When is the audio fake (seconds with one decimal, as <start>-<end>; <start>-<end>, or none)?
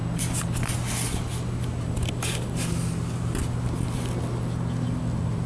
none